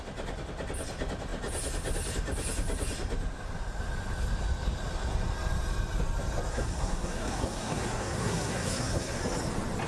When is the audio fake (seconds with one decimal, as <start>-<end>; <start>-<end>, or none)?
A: 6.5-9.2